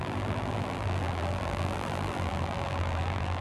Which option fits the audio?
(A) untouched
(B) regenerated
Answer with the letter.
B